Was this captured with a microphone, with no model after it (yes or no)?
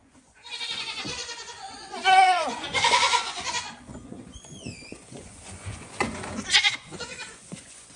no